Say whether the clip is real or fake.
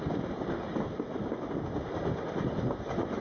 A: real